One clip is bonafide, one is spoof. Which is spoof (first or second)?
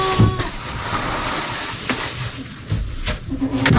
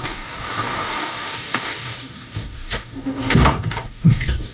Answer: second